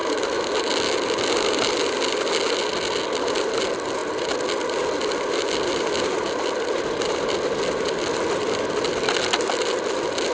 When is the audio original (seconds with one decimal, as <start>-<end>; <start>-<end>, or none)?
0.0-10.3